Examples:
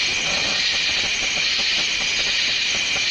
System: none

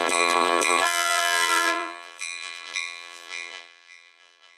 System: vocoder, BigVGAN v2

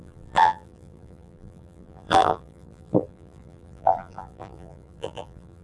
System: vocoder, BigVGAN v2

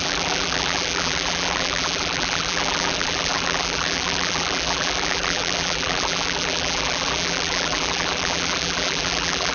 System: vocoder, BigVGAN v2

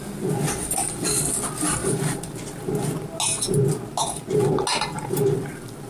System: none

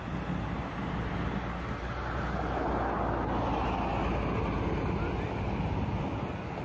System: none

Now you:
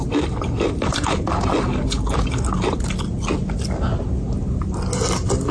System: none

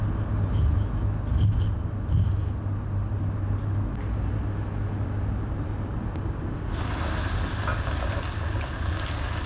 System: none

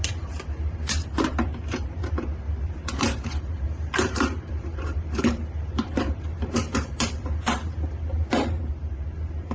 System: vocoder, BigVGAN v2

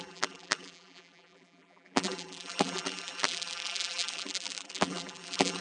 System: vocoder, BigVGAN v2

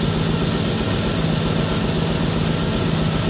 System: none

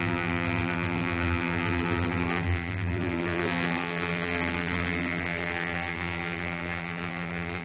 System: vocoder, BigVGAN v2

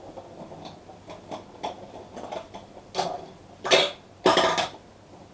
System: none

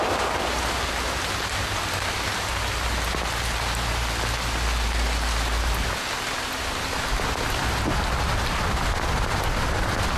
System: none